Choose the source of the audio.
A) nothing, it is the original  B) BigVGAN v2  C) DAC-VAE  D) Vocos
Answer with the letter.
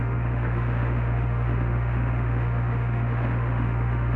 C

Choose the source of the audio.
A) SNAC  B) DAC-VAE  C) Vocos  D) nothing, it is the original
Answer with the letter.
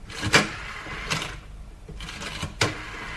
D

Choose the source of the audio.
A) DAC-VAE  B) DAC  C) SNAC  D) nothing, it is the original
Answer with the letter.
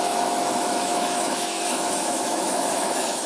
A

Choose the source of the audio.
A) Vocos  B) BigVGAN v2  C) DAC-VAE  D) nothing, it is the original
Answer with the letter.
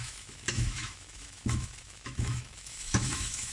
C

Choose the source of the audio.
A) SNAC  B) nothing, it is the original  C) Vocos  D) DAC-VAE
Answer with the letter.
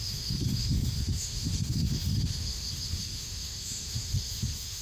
D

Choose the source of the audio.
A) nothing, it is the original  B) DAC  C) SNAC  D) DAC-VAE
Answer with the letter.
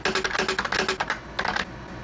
A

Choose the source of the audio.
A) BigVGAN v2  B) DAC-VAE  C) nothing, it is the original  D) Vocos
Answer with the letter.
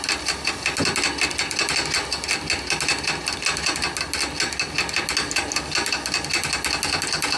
C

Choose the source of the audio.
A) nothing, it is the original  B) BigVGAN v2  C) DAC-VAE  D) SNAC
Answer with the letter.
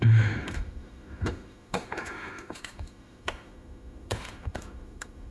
C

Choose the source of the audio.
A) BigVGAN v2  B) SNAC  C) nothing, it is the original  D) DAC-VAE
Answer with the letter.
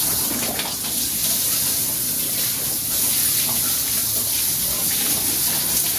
C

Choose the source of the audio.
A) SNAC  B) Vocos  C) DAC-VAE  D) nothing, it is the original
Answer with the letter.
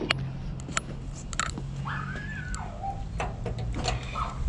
D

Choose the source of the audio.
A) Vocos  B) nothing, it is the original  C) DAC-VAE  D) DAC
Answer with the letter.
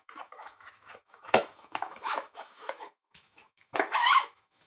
C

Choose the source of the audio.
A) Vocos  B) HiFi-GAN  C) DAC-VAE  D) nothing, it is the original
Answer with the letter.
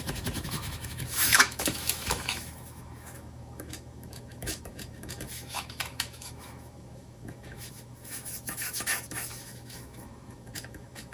C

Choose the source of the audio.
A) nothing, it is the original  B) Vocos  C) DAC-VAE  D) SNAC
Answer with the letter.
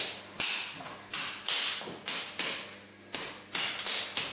A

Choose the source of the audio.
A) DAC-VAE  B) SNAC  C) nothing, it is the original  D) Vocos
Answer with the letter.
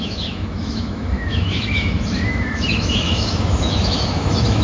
A